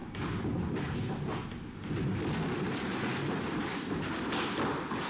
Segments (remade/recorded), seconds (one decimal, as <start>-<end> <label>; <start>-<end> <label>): 0.0-5.1 recorded